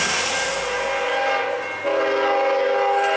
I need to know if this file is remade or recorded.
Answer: recorded